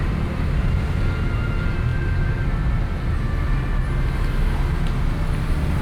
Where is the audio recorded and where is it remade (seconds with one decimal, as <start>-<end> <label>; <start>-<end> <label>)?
0.0-5.8 recorded